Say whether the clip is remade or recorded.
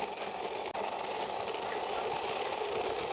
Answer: recorded